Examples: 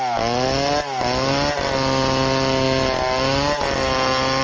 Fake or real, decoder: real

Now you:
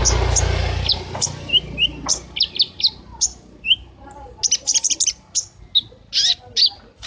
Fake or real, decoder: real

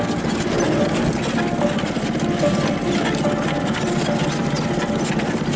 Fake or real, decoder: real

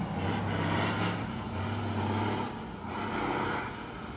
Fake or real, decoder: real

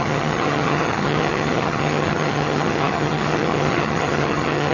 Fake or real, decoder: fake, vocoder, HiFi-GAN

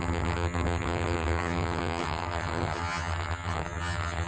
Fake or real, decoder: fake, vocoder, HiFi-GAN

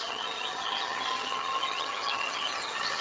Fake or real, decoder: fake, vocoder, HiFi-GAN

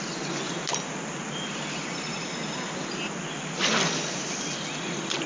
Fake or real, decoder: real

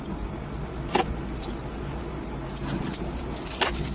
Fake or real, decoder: real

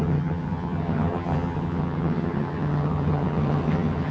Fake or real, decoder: fake, vocoder, HiFi-GAN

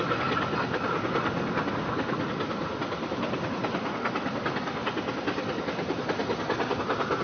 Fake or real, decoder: real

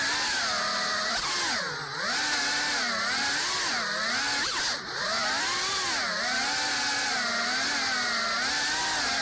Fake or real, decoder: real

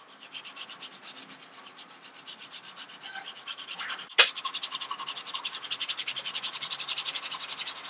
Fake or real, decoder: real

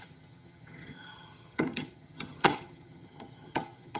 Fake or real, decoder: fake, vocoder, HiFi-GAN